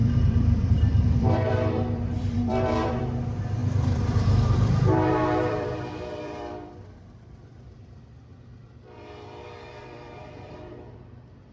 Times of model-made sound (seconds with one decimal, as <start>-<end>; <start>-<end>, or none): 0.0-3.0; 3.6-8.0; 8.6-11.0